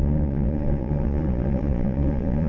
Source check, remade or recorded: remade